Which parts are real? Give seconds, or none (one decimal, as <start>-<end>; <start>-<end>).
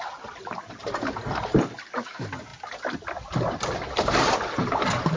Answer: 0.0-5.2